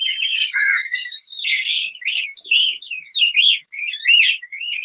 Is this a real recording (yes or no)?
no